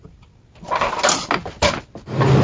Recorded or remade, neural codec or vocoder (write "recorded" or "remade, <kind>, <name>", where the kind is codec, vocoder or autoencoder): recorded